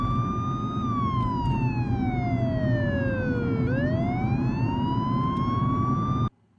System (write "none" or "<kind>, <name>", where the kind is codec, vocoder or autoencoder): none